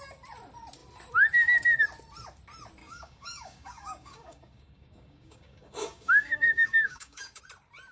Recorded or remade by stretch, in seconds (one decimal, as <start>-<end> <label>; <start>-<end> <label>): 0.0-2.8 recorded; 2.8-7.4 remade; 7.4-7.9 recorded

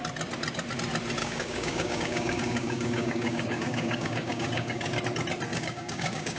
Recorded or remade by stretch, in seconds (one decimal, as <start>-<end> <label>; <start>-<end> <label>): 0.0-1.2 recorded; 1.2-5.0 remade; 5.0-5.5 recorded; 5.5-6.4 remade

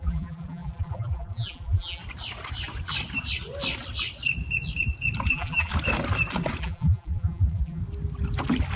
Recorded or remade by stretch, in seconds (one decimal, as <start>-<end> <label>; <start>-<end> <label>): 0.0-2.0 remade; 2.0-5.3 recorded; 5.3-5.7 remade; 5.7-6.6 recorded; 6.6-7.8 remade; 7.8-8.8 recorded